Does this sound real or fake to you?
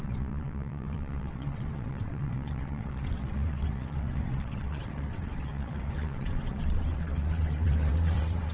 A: fake